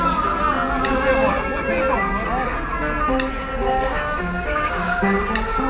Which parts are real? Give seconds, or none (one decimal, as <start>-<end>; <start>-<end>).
0.0-3.9; 5.2-5.7